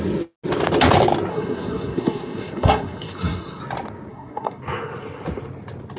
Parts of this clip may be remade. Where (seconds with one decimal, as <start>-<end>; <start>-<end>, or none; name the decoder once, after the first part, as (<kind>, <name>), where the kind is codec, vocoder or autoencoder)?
1.3-3.6 (codec, SNAC); 4.1-4.6